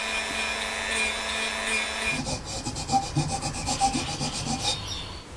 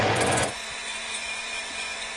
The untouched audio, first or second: first